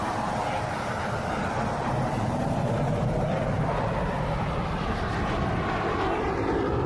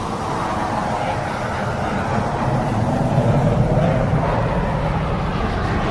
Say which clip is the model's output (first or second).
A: first